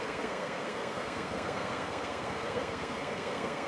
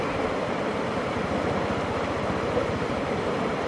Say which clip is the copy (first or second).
first